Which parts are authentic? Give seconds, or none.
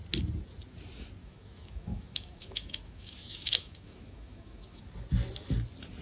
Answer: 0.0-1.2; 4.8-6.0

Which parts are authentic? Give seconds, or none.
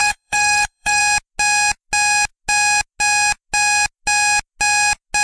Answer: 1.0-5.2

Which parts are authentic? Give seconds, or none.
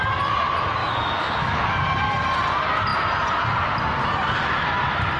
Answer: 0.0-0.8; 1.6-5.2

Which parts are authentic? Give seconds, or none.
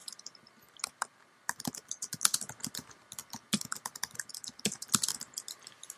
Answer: 0.0-6.0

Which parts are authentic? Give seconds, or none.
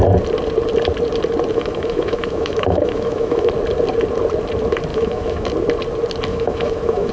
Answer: 0.0-1.5; 3.5-4.9; 5.5-6.3